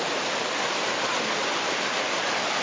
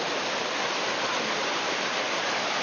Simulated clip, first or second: second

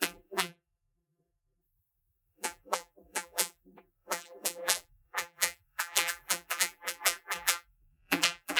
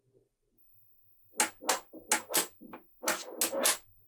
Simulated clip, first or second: first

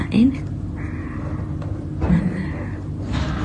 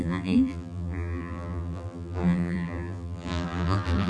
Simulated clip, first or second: second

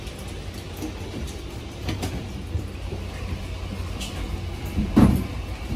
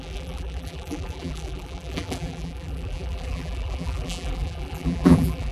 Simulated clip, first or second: second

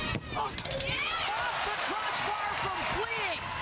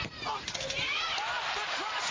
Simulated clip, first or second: second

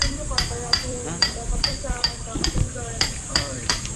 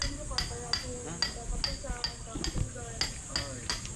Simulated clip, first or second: first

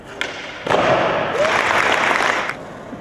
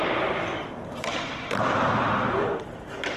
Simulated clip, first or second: second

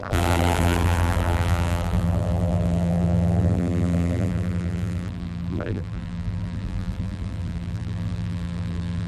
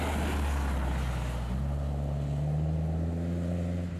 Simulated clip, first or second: first